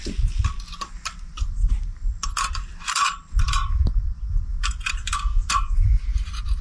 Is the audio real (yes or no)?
yes